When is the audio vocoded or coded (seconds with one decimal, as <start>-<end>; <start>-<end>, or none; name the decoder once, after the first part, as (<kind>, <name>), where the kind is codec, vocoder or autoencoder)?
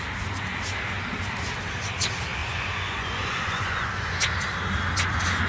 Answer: 2.4-4.2 (vocoder, Vocos)